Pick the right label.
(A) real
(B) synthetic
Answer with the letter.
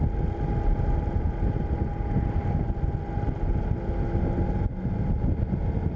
A